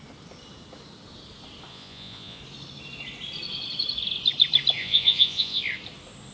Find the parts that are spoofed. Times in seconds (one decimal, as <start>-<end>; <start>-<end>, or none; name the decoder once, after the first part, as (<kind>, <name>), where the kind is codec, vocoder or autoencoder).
1.7-2.4 (vocoder, Vocos); 4.8-5.6